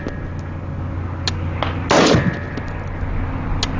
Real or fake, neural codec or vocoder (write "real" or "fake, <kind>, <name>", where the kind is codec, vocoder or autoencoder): real